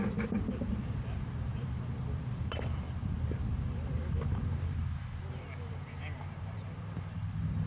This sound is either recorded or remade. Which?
remade